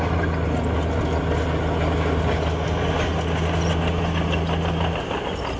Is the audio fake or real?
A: real